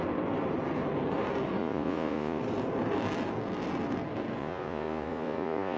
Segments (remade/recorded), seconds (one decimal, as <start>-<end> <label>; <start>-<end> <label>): 0.0-1.6 recorded; 1.6-2.4 remade; 2.4-4.4 recorded; 4.4-5.8 remade